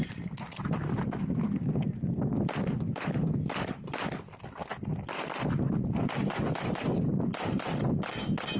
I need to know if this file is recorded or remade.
recorded